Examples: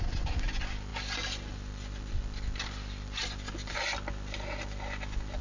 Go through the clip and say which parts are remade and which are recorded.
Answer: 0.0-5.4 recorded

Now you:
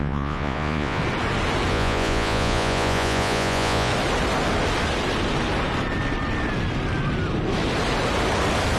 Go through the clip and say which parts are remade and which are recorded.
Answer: 0.0-1.0 remade; 1.0-1.7 recorded; 1.7-3.9 remade; 3.9-8.8 recorded

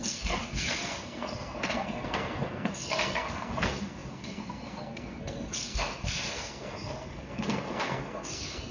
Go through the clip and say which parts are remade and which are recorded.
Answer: 0.0-8.7 remade

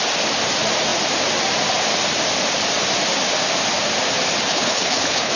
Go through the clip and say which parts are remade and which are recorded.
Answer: 0.0-4.5 recorded; 4.5-5.3 remade

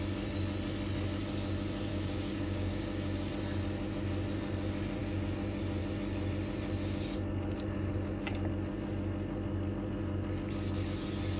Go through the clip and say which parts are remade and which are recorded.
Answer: 0.0-1.9 recorded; 1.9-3.3 remade; 3.3-11.4 recorded

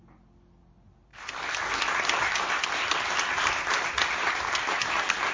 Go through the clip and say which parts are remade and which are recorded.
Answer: 0.0-1.1 recorded; 1.1-4.3 remade; 4.3-5.3 recorded

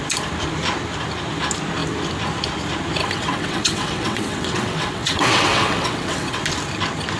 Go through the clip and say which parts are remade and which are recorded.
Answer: 0.0-3.0 recorded; 3.0-6.4 remade; 6.4-7.2 recorded

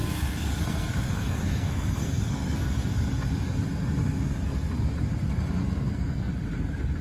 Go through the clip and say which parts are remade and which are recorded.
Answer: 0.0-2.9 remade; 2.9-5.6 recorded; 5.6-6.3 remade; 6.3-7.0 recorded